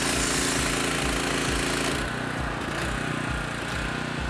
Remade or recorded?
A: recorded